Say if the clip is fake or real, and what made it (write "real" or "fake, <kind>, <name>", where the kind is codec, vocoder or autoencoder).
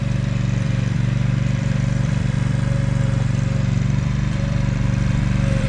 fake, vocoder, BigVGAN v2